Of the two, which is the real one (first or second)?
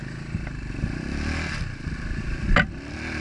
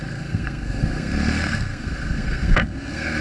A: first